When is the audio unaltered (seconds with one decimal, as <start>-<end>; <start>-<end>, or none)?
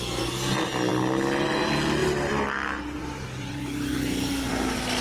0.0-2.0; 4.5-5.0